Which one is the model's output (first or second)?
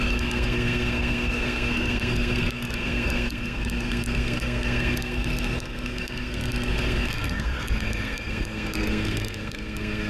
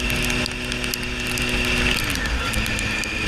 first